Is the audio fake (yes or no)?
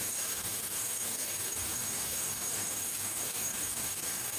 yes